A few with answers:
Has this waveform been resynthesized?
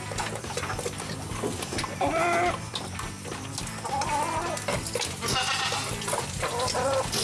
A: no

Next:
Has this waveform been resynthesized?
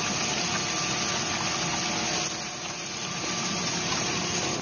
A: no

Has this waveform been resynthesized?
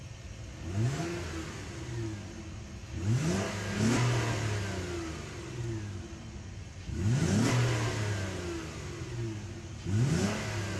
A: no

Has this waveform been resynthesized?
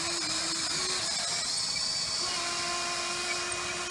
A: no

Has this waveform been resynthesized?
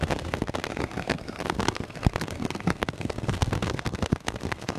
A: yes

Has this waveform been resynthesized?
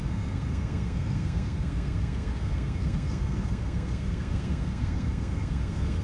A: yes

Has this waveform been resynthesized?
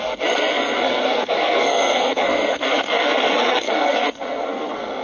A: yes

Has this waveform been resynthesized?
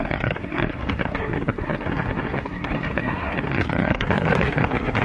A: yes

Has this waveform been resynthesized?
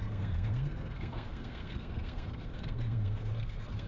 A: yes